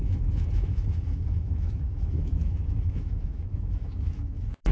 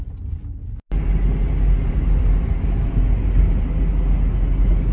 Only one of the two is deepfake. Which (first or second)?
first